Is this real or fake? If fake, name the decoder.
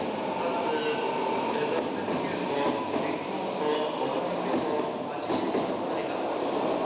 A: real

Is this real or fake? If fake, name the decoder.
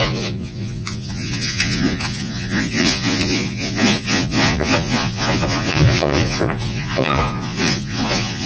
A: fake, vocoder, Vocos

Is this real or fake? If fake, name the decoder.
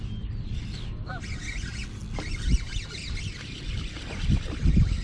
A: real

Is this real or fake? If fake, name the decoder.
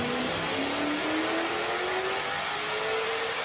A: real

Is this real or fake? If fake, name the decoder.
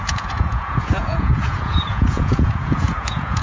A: fake, vocoder, Vocos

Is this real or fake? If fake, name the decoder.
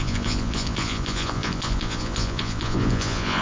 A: fake, vocoder, Vocos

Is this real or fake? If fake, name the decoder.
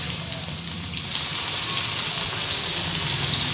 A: real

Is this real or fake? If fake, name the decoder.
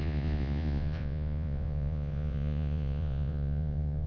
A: fake, vocoder, Vocos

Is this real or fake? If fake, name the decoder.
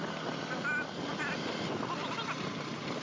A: real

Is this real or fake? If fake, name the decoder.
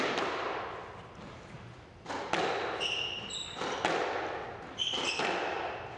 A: real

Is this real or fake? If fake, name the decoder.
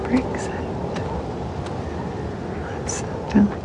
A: real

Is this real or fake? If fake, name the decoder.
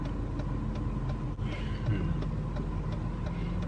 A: real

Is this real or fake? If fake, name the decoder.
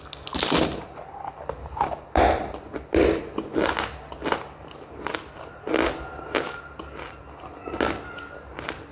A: real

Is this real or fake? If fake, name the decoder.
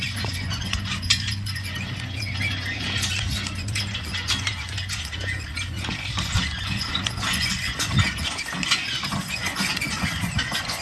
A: fake, vocoder, Vocos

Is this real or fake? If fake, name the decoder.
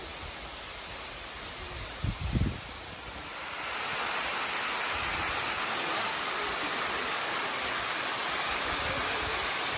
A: real